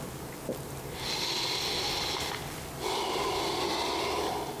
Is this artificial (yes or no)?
no